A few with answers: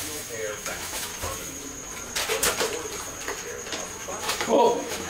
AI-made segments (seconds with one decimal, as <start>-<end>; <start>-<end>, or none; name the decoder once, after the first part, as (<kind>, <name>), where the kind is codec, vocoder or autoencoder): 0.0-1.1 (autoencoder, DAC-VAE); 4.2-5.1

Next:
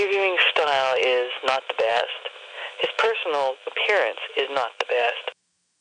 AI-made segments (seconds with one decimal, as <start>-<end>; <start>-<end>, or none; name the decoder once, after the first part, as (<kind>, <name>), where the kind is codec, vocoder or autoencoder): 0.0-5.8 (autoencoder, DAC-VAE)

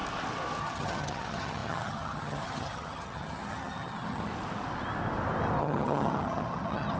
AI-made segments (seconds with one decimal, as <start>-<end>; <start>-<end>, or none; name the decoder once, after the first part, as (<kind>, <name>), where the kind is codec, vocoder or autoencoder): 0.6-4.3 (vocoder, HiFi-GAN); 5.6-7.0